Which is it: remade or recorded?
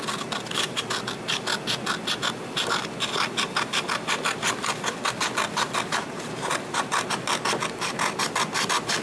recorded